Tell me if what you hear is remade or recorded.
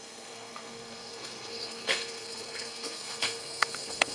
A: remade